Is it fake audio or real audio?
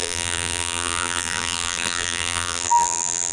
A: fake